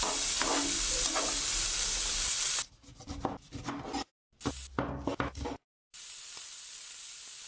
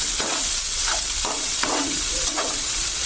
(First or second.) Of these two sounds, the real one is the first